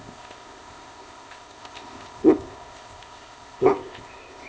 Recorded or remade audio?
remade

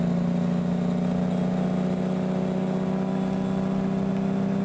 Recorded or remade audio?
recorded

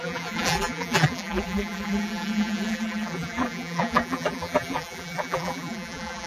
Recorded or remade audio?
remade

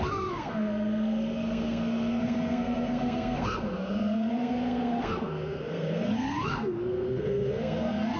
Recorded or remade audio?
remade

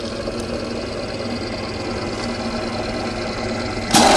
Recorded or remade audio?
recorded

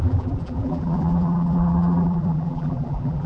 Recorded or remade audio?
remade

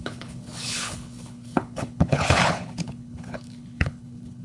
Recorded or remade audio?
remade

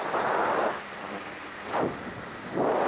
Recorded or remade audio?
recorded